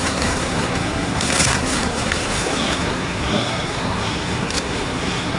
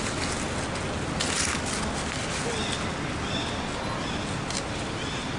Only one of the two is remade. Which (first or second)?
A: first